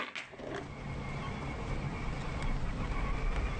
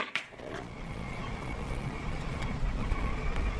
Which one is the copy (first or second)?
second